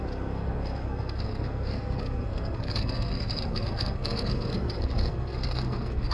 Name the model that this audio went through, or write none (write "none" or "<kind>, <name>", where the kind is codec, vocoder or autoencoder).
codec, SNAC